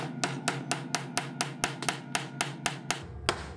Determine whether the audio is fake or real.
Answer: real